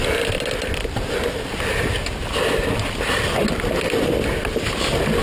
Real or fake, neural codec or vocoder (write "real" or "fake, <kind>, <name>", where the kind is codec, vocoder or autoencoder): real